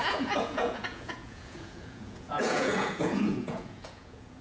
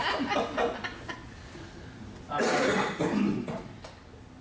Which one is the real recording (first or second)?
second